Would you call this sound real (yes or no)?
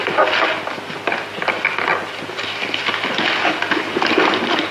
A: yes